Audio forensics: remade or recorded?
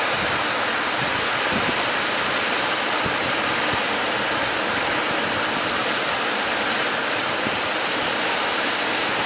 recorded